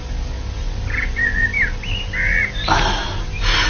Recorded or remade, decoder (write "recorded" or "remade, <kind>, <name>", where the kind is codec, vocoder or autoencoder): recorded